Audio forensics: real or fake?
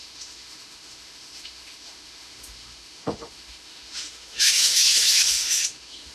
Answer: fake